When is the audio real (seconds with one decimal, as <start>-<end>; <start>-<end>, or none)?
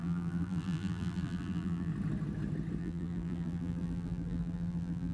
1.9-2.8